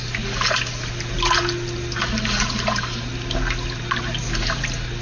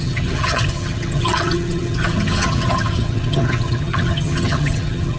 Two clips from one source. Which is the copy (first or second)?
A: second